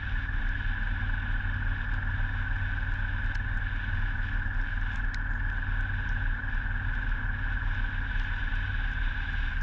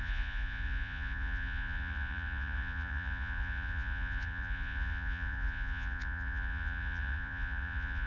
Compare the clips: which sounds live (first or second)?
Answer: first